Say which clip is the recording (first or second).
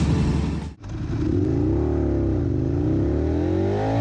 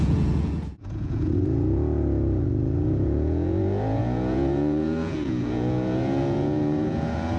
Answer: first